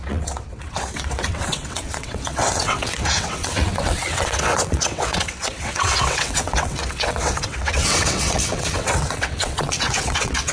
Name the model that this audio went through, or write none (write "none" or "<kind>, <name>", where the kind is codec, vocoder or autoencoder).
vocoder, WaveNeXt